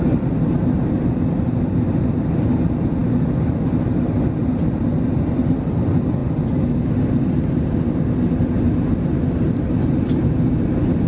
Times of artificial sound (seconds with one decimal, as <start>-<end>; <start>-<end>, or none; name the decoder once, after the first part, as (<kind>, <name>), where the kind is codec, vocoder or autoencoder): none